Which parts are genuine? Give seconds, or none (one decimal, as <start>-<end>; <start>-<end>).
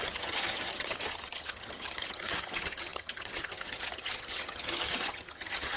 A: none